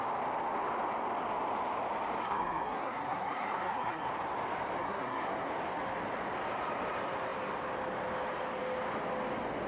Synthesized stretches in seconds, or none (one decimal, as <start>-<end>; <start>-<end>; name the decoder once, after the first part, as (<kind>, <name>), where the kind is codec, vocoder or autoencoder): 2.2-4.1 (codec, SNAC); 4.8-5.5